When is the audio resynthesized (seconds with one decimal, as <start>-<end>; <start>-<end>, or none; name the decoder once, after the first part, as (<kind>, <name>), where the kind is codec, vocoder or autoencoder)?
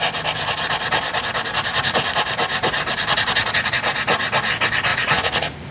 4.9-5.7 (vocoder, Vocos)